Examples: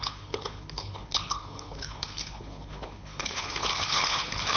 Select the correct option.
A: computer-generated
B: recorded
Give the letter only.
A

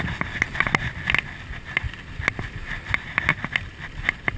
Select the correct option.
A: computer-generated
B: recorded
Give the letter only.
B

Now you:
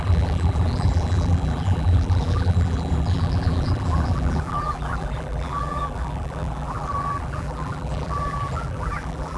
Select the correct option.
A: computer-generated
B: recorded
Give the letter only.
A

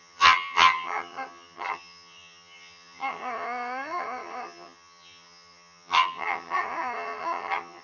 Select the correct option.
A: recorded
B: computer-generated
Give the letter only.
B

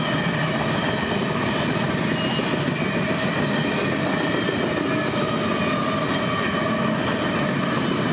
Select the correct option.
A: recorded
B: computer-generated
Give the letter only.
A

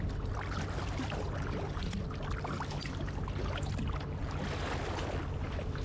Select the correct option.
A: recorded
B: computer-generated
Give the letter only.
A